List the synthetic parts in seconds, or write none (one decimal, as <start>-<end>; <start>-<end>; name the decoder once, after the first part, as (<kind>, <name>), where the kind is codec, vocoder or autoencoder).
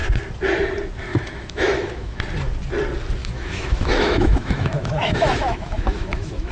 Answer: 1.1-2.2 (autoencoder, DAC-VAE); 3.2-6.5